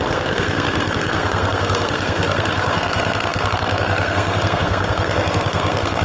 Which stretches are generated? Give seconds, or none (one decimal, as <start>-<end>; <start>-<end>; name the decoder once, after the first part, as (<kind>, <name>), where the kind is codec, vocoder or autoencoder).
0.0-6.0 (codec, SNAC)